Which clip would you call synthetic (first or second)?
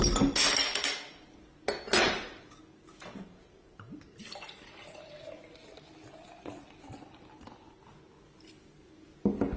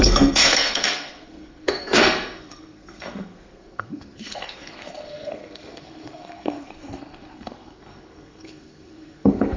second